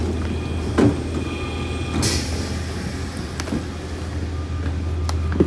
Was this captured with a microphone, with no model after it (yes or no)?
yes